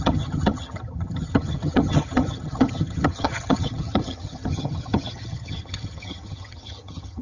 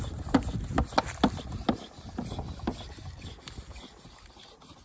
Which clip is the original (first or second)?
second